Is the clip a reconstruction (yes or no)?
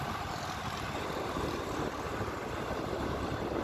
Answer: no